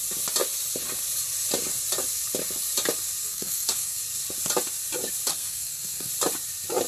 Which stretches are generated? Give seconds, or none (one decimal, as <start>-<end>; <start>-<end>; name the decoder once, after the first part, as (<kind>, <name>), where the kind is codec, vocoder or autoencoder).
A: 3.2-4.0 (codec, SNAC); 5.3-6.1